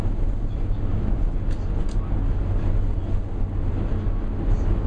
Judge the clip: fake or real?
real